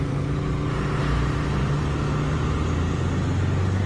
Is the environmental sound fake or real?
real